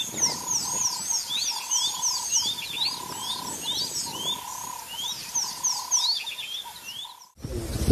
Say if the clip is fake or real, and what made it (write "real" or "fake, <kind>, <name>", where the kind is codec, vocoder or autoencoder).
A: real